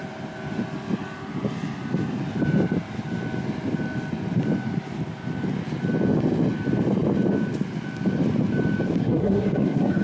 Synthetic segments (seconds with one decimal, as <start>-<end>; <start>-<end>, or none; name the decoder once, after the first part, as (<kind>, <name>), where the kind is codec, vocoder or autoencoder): 9.0-10.0 (codec, SNAC)